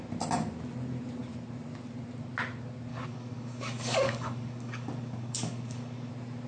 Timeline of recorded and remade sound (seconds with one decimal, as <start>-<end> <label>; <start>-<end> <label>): 0.0-2.9 recorded; 2.9-6.1 remade; 6.1-6.5 recorded